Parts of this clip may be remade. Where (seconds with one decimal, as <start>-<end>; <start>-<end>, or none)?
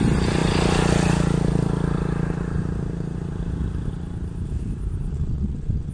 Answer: 5.1-5.9